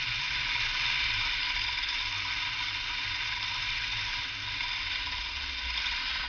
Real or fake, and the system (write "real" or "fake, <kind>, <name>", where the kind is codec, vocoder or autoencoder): real